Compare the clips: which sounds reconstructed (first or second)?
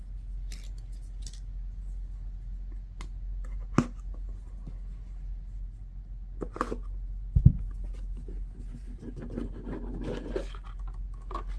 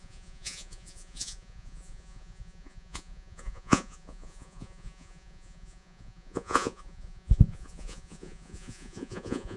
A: second